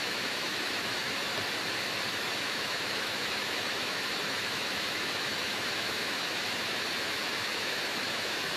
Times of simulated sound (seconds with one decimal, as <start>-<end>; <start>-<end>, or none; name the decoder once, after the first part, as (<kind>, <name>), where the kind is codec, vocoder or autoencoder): 0.0-1.3 (autoencoder, DAC-VAE); 2.1-8.6

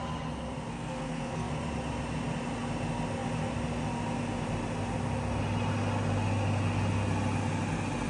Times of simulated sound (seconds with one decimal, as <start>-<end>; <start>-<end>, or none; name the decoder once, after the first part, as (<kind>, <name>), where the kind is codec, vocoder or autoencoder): 0.7-1.5 (codec, SNAC)

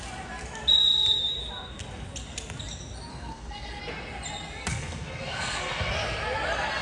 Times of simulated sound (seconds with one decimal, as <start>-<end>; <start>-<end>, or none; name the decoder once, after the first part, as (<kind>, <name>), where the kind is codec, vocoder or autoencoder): 3.1-3.8 (codec, SNAC); 4.7-5.9

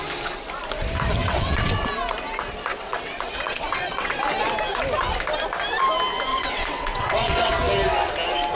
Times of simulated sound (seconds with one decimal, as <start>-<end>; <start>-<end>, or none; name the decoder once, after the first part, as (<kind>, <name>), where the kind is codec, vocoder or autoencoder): 1.2-1.9 (vocoder, WaveNeXt); 2.7-4.2; 6.3-7.5

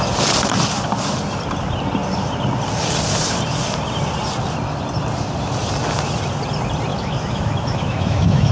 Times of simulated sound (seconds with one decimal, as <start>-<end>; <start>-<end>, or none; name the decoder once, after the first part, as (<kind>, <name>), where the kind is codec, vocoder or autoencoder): 6.9-8.5 (autoencoder, DAC-VAE)